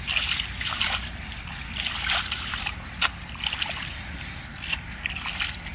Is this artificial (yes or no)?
no